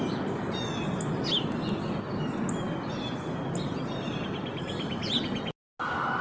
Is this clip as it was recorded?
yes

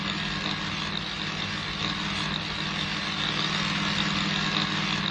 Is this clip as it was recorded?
yes